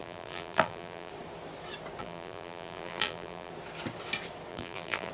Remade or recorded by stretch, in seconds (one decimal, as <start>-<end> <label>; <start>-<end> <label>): 0.0-1.1 remade; 1.1-2.0 recorded; 2.0-3.5 remade; 3.5-4.5 recorded; 4.5-5.1 remade